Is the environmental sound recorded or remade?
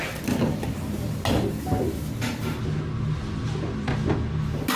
recorded